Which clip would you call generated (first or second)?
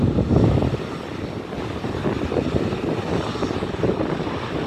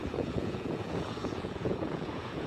second